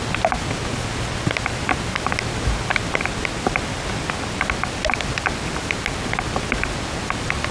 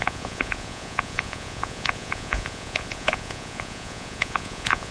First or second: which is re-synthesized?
second